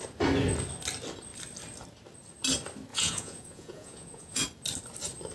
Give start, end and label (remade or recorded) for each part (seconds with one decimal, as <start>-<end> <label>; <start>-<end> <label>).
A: 0.0-2.9 recorded; 2.9-4.4 remade; 4.4-5.3 recorded